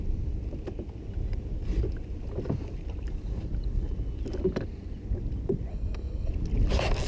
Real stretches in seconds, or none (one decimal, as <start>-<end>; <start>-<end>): 0.0-5.7; 6.3-7.1